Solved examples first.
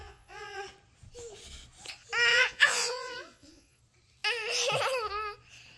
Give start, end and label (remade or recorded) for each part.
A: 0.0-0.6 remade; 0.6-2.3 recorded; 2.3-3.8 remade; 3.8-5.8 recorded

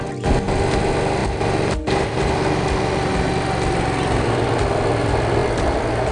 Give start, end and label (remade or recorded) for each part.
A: 0.0-6.1 recorded

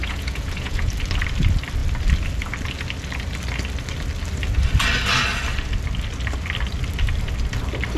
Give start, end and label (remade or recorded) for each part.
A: 0.0-0.9 remade; 0.9-8.0 recorded

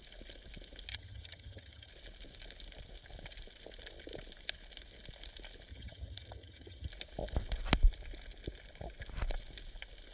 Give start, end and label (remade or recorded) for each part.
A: 0.0-0.9 recorded; 0.9-1.9 remade; 1.9-5.7 recorded; 5.7-6.9 remade; 6.9-10.1 recorded

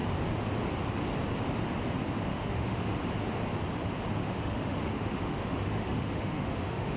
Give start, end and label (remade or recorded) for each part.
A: 0.0-2.3 recorded; 2.3-2.9 remade; 2.9-4.2 recorded; 4.2-7.0 remade

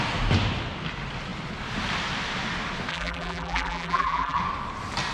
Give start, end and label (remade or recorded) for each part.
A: 0.0-2.9 recorded; 2.9-4.4 remade; 4.4-5.1 recorded

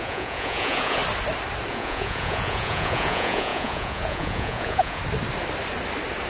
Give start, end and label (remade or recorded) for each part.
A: 0.0-1.0 remade; 1.0-1.7 recorded; 1.7-5.0 remade; 5.0-6.3 recorded

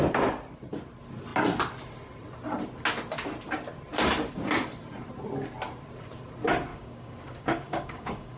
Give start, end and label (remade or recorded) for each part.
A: 0.0-6.7 recorded; 6.7-8.4 remade